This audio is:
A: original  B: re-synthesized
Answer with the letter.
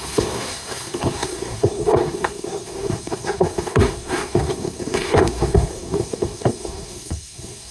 B